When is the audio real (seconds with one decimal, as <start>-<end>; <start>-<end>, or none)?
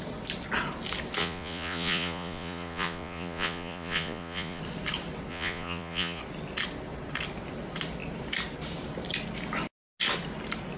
0.0-1.2; 4.6-5.3; 6.2-10.8